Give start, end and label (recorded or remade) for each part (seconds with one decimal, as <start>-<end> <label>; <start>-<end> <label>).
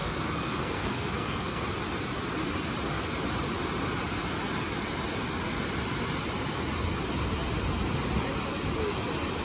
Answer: 0.0-1.6 remade; 1.6-9.4 recorded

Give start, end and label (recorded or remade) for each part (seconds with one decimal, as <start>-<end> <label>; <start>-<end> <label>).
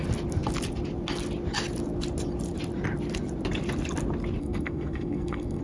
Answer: 0.0-4.4 recorded; 4.4-5.6 remade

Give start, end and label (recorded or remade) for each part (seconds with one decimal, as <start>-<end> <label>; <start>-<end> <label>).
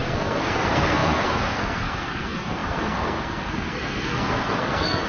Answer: 0.0-5.1 remade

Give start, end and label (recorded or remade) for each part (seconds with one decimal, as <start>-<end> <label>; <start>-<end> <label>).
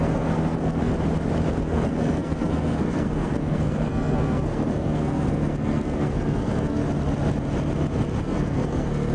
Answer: 0.0-0.9 remade; 0.9-1.6 recorded; 1.6-6.8 remade; 6.8-8.2 recorded; 8.2-9.1 remade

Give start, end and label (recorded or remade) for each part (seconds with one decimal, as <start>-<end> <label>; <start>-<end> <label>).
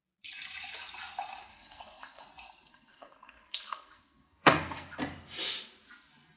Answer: 0.0-1.5 recorded; 1.5-2.2 remade; 2.2-2.7 recorded; 2.7-5.0 remade; 5.0-6.4 recorded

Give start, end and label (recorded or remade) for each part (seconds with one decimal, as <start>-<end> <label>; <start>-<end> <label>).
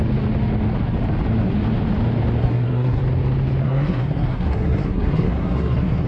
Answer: 0.0-2.4 recorded; 2.4-3.0 remade; 3.0-3.6 recorded; 3.6-6.1 remade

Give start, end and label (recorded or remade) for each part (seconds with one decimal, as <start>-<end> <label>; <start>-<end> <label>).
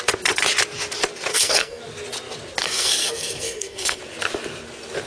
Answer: 0.0-1.3 recorded; 1.3-1.8 remade; 1.8-2.6 recorded; 2.6-4.0 remade; 4.0-5.1 recorded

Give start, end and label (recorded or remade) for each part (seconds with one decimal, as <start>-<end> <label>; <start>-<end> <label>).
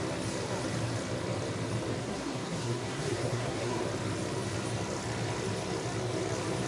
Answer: 0.0-2.0 recorded; 2.0-3.8 remade; 3.8-6.7 recorded